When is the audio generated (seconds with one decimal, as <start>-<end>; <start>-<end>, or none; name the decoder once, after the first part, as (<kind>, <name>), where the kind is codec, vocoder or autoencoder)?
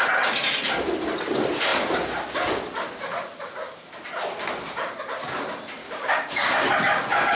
5.8-6.7 (codec, DAC)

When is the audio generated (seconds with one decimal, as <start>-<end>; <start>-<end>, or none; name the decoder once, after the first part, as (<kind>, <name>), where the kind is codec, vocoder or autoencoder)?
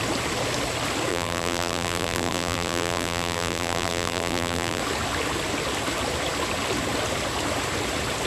1.1-4.8 (vocoder, BigVGAN v2)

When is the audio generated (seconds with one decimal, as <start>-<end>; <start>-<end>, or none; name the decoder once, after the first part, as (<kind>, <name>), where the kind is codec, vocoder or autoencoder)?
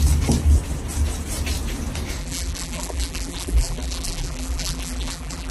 2.2-5.5 (vocoder, BigVGAN v2)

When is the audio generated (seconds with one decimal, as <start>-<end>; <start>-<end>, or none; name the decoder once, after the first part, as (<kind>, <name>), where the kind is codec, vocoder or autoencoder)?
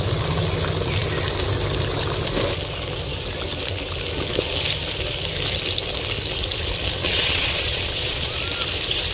7.0-8.4 (vocoder, Vocos)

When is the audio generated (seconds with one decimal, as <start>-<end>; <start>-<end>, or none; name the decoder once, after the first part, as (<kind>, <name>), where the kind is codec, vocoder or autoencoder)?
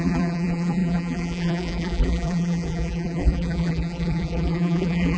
0.0-5.2 (vocoder, BigVGAN v2)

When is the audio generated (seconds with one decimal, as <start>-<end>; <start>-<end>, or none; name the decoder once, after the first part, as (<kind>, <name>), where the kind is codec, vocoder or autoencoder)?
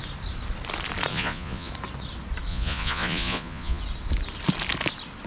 1.1-1.7 (vocoder, Vocos); 2.5-3.8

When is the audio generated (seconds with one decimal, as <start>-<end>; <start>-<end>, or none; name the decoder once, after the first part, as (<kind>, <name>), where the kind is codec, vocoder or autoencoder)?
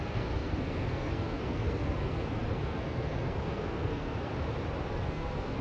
0.0-4.3 (codec, SNAC); 4.9-5.6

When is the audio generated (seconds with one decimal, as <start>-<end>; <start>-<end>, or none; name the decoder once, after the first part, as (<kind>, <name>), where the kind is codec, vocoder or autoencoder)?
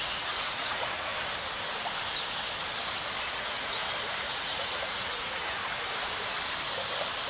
0.0-1.1 (vocoder, Vocos); 3.3-3.8; 4.3-5.6